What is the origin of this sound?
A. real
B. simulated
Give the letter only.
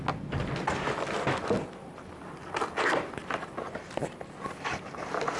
A